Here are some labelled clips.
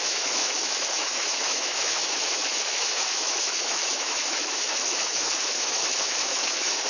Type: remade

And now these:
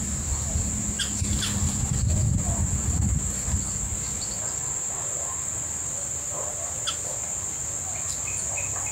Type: recorded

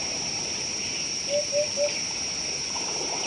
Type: recorded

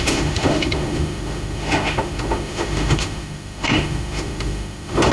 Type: remade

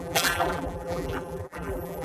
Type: remade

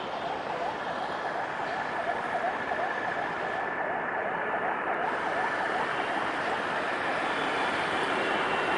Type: recorded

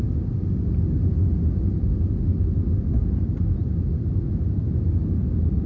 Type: recorded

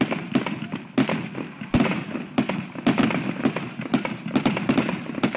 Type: recorded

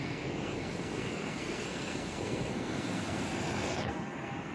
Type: remade